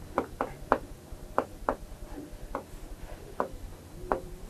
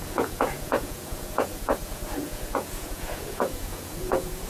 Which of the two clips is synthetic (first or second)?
second